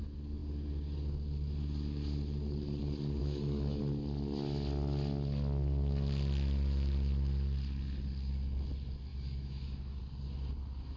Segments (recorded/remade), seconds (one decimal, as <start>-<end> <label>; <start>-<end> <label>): 0.0-3.2 recorded; 3.2-3.8 remade; 3.8-9.1 recorded; 9.1-10.0 remade; 10.0-11.0 recorded